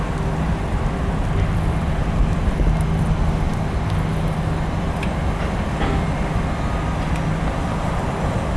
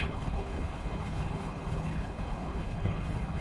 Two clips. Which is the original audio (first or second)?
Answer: first